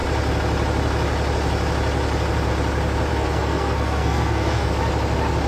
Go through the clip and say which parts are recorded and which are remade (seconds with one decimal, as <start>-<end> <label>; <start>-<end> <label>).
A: 0.0-3.1 recorded; 3.1-4.7 remade; 4.7-5.5 recorded